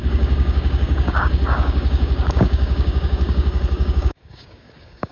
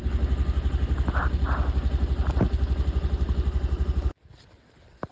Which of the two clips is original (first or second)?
second